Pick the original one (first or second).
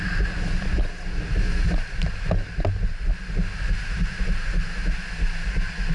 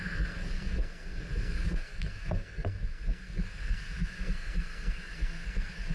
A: first